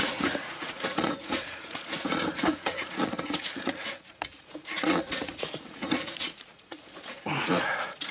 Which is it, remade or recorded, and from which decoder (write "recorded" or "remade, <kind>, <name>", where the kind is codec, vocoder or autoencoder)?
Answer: remade, vocoder, Vocos